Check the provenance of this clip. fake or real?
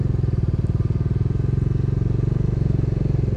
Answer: real